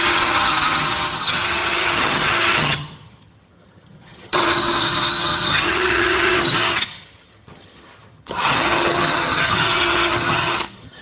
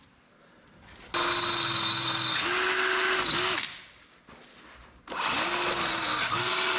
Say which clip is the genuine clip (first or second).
second